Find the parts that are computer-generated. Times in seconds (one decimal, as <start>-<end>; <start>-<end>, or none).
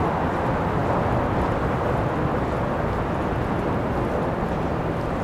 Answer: none